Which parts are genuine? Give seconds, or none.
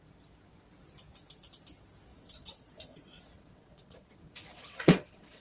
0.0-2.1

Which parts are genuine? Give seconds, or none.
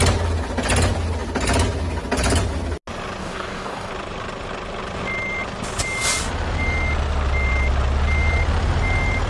0.0-3.2; 3.9-9.3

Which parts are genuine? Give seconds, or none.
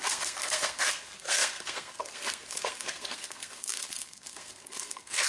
none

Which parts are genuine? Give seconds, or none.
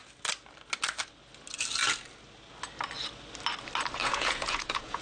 0.0-4.0